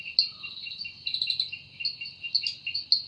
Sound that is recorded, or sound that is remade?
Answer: recorded